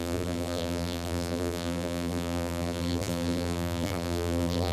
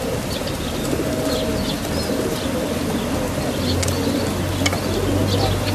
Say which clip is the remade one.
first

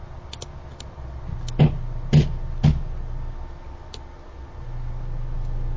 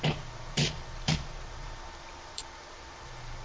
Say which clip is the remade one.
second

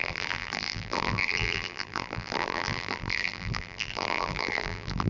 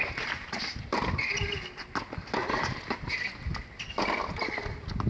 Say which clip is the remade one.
first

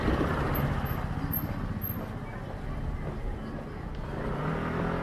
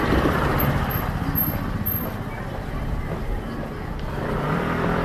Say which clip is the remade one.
second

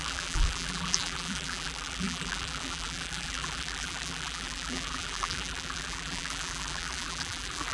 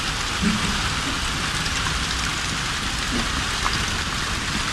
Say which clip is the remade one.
first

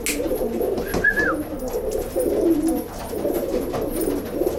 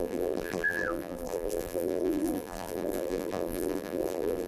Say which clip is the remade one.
second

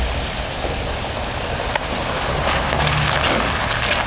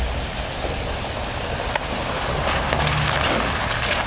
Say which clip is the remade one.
second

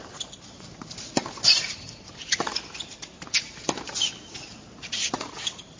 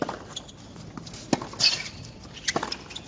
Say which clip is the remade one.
first